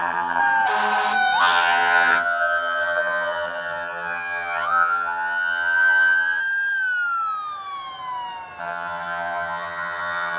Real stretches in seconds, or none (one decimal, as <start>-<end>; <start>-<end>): 0.4-1.4; 6.4-8.6